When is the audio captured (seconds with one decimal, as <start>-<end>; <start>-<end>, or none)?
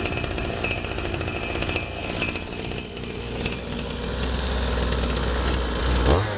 0.0-6.4